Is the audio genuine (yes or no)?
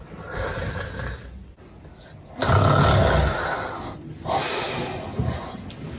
yes